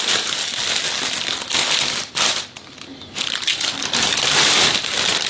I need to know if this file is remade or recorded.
remade